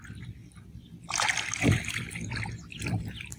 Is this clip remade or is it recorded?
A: recorded